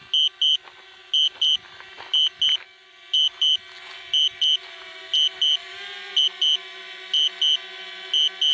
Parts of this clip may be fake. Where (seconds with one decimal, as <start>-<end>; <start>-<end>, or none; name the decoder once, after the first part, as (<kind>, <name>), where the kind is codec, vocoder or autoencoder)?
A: none